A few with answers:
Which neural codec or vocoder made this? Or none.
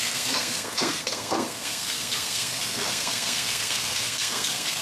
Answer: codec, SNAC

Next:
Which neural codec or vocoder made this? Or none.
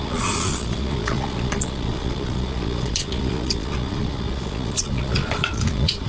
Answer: vocoder, Vocos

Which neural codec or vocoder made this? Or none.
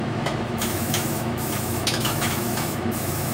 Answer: autoencoder, DAC-VAE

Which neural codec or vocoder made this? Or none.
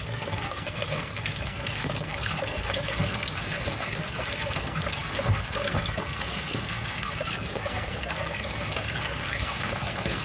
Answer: codec, SNAC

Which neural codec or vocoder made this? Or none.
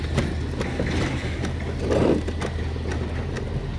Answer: none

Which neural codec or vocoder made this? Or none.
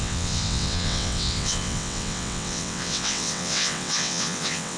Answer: vocoder, WaveNeXt